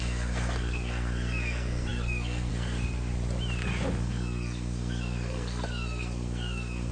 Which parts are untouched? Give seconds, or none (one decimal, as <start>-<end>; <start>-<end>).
3.1-4.0